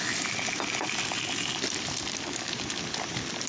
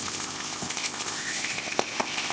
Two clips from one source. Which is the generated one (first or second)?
second